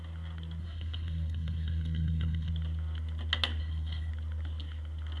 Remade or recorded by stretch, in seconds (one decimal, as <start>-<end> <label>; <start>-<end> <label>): 0.0-0.6 recorded; 0.6-2.5 remade; 2.5-3.6 recorded; 3.6-4.1 remade; 4.1-5.2 recorded